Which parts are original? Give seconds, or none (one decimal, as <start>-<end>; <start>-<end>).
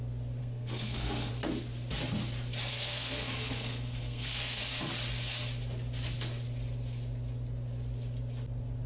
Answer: 0.0-0.4; 1.3-2.7; 4.6-8.9